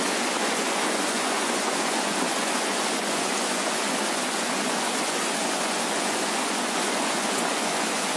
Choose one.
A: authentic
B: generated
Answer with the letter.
B